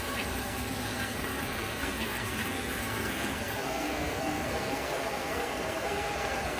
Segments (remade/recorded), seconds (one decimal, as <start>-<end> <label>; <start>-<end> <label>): 0.0-6.6 remade